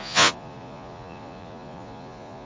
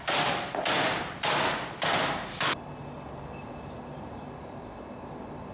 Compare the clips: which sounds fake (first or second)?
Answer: first